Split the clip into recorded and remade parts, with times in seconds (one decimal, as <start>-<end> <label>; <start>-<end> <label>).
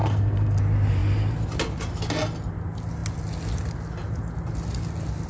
0.0-0.6 remade; 0.6-5.3 recorded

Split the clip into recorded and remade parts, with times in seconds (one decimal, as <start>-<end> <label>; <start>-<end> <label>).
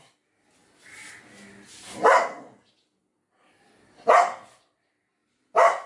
0.0-5.9 recorded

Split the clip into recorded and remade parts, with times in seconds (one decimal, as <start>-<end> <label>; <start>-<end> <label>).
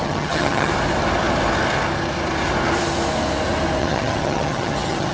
0.0-0.7 remade; 0.7-3.8 recorded; 3.8-5.1 remade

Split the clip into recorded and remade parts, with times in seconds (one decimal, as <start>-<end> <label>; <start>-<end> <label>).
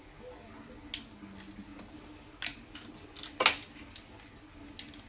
0.0-5.1 recorded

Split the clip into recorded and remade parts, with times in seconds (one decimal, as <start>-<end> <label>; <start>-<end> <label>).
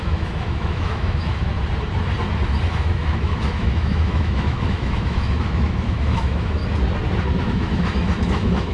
0.0-1.5 remade; 1.5-2.7 recorded; 2.7-6.6 remade; 6.6-7.4 recorded; 7.4-8.7 remade